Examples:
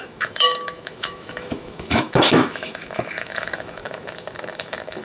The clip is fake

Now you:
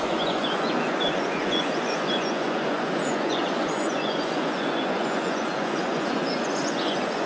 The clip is fake